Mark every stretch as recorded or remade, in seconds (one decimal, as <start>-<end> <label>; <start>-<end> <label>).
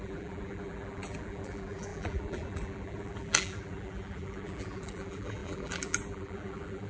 0.0-6.9 remade